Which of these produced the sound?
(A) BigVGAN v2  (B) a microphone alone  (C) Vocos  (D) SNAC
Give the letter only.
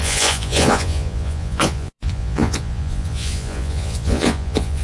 C